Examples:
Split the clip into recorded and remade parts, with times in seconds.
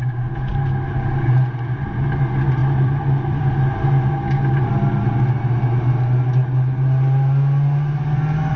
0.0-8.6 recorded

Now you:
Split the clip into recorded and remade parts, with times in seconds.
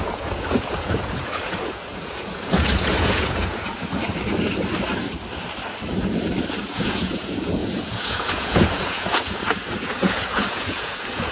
0.0-4.0 remade; 4.0-6.6 recorded; 6.6-11.3 remade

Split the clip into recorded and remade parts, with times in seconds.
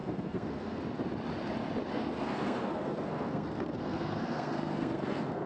0.0-0.8 remade; 0.8-1.9 recorded; 1.9-5.5 remade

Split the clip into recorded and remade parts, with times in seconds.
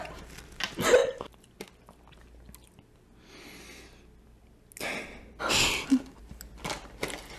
0.0-7.4 recorded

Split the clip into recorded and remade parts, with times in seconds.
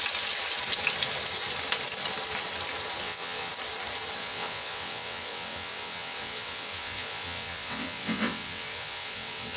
0.0-3.0 recorded; 3.0-3.5 remade; 3.5-4.2 recorded; 4.2-9.6 remade